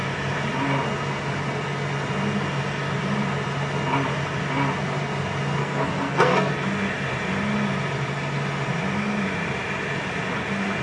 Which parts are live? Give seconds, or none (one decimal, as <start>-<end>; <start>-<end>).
0.0-5.6; 6.5-10.8